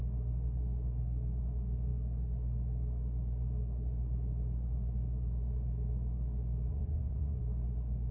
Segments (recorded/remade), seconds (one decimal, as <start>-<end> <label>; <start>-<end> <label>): 0.0-6.7 recorded; 6.7-7.4 remade; 7.4-8.1 recorded